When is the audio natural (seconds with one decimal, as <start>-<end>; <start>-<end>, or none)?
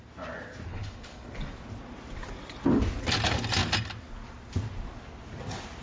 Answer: 0.0-0.7; 1.3-5.8